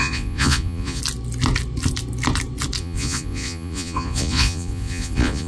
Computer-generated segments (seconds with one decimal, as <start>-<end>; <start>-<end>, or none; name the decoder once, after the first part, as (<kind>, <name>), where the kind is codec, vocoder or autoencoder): 0.0-1.0 (vocoder, Vocos); 2.8-5.5